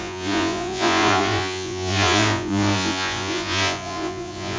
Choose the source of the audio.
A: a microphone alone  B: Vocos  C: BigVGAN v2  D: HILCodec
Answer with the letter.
B